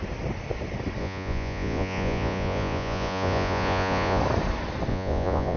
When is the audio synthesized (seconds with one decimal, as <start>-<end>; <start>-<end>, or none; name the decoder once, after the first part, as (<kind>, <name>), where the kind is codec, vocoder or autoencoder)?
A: 1.0-4.2 (vocoder, Vocos); 4.9-5.6